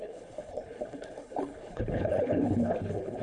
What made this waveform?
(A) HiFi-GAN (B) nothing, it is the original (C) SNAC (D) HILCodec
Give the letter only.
D